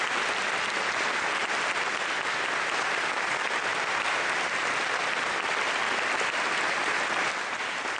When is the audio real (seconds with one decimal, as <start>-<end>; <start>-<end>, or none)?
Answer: 0.0-8.0